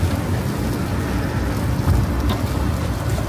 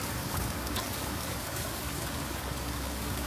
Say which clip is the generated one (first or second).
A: second